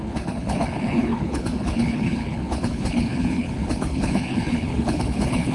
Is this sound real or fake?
fake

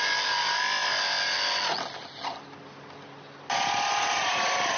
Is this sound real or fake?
real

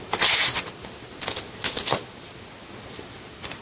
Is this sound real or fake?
real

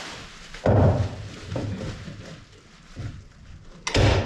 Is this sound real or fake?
real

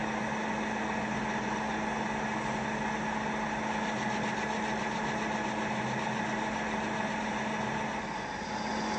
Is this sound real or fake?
real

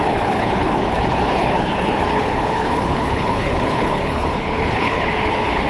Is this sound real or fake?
fake